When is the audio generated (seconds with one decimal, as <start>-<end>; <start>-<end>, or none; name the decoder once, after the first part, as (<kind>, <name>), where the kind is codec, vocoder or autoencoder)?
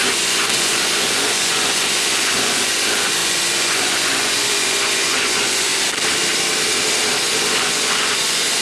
0.0-5.7 (vocoder, Vocos); 7.2-8.6